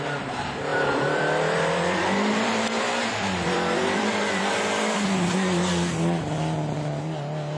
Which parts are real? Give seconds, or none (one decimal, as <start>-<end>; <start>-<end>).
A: 0.0-0.7; 5.3-7.6